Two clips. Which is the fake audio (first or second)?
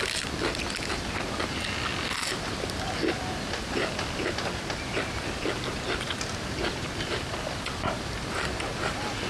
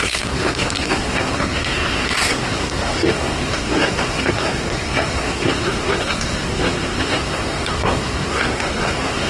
second